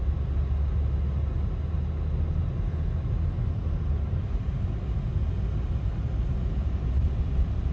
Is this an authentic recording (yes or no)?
yes